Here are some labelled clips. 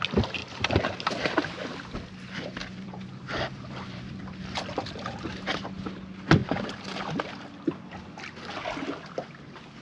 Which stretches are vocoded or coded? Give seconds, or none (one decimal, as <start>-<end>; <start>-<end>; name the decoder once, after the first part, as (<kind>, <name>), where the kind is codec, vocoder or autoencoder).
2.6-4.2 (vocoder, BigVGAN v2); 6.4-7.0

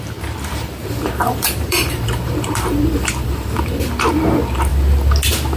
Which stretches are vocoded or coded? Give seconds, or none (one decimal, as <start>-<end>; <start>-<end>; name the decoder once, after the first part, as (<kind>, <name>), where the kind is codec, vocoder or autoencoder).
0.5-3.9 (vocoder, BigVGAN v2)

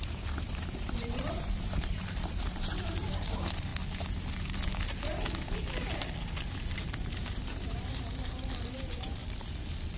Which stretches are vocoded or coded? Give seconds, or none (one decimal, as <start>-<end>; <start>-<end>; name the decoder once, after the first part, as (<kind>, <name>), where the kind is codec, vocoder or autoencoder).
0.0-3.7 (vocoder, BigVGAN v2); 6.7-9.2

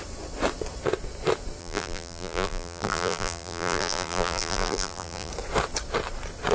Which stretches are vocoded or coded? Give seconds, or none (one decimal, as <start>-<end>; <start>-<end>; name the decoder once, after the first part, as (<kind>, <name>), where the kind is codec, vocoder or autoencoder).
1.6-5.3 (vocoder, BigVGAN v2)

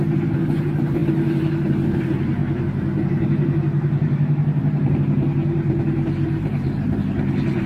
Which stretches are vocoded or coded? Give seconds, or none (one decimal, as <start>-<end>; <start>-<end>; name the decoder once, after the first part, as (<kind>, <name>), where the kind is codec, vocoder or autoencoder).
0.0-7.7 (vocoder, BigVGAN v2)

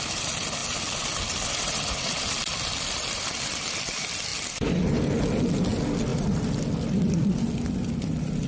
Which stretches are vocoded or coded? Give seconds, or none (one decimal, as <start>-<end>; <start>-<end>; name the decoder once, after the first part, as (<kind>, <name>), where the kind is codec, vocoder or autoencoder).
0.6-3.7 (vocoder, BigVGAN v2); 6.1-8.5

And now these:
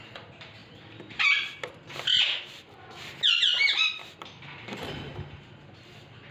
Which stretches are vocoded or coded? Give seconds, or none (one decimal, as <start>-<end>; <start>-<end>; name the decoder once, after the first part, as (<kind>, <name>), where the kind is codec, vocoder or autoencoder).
none

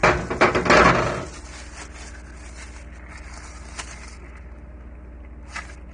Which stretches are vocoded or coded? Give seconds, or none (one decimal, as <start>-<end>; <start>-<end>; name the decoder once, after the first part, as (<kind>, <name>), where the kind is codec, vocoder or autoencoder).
none